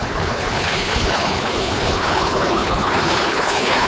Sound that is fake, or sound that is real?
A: fake